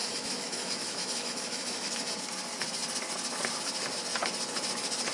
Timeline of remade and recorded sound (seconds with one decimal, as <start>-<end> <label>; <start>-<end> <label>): 0.0-1.9 remade; 1.9-5.1 recorded